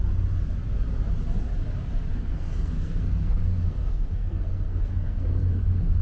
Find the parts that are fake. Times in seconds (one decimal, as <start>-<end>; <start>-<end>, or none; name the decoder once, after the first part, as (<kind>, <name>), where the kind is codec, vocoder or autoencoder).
2.1-6.0 (codec, SNAC)